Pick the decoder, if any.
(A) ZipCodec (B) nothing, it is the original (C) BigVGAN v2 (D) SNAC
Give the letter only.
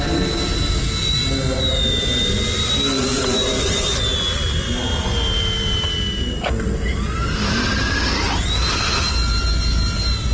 B